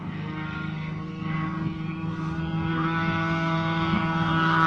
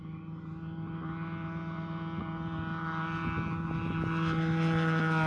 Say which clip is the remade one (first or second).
first